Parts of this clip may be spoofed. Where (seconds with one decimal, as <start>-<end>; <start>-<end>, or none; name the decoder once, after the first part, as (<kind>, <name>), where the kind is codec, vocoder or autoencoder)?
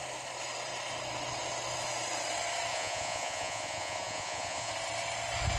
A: 2.7-4.7 (vocoder, Vocos)